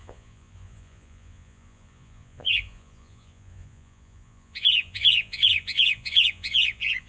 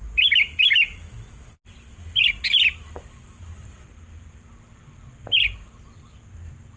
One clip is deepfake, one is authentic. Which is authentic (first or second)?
second